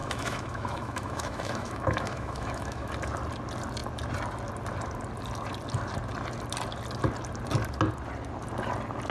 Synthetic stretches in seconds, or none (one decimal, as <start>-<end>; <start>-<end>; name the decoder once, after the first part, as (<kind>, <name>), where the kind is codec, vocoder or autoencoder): 0.0-2.9 (autoencoder, DAC-VAE)